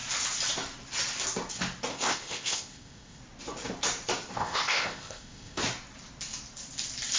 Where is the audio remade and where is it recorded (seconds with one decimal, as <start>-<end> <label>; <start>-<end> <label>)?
0.0-1.9 recorded; 1.9-3.2 remade; 3.2-4.4 recorded; 4.4-5.6 remade; 5.6-7.2 recorded